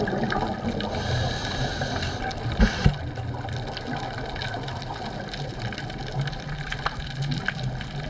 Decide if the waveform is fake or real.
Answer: real